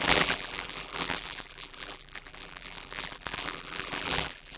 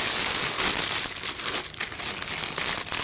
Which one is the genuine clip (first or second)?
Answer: second